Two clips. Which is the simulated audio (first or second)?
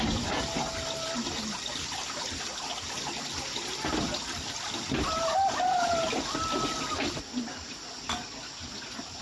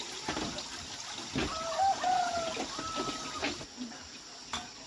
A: first